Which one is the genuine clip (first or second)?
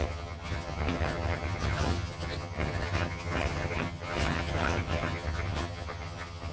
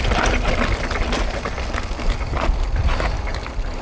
second